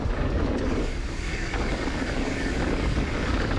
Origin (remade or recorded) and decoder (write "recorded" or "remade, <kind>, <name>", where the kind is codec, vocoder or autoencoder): remade, codec, DAC